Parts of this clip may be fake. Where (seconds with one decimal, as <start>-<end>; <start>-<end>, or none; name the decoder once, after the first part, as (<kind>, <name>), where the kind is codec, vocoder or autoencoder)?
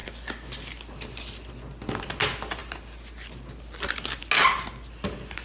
none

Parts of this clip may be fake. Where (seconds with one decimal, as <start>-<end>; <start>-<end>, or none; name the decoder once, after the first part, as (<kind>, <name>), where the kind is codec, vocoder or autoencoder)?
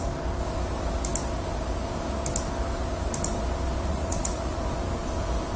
3.9-4.6 (vocoder, Vocos)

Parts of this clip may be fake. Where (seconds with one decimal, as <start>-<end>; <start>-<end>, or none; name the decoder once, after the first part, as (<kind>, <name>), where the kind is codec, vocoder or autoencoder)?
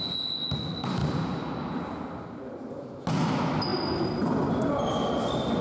none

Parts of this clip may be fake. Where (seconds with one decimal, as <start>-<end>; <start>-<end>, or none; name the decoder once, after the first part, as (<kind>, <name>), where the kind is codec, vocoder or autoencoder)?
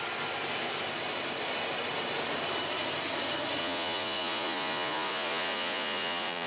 3.6-6.5 (vocoder, Vocos)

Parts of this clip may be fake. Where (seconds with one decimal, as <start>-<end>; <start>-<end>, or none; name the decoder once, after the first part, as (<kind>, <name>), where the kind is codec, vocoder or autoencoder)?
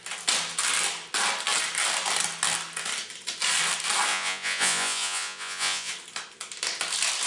4.1-5.9 (vocoder, Vocos)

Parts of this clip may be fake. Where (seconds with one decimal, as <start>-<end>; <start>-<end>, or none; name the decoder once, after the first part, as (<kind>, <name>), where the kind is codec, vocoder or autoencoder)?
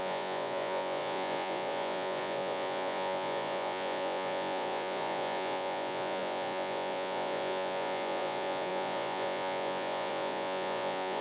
0.0-11.2 (vocoder, Vocos)